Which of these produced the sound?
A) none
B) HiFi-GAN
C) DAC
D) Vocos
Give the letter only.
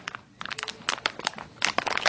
A